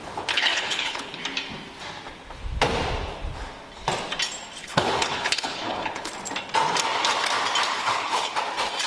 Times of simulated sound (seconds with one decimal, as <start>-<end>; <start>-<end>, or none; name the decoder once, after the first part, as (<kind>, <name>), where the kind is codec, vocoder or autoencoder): 0.0-1.2 (codec, HILCodec); 4.6-6.1; 7.7-8.4